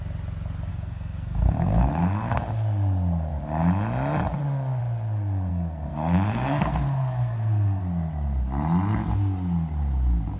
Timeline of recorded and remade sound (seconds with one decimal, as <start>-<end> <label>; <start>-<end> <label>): 0.0-0.7 recorded; 0.7-2.4 remade; 2.4-5.5 recorded; 5.5-7.8 remade; 7.8-10.4 recorded